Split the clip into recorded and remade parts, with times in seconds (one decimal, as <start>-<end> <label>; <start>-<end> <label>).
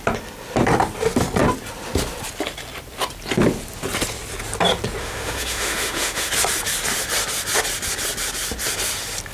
0.0-5.0 recorded; 5.0-6.3 remade; 6.3-9.3 recorded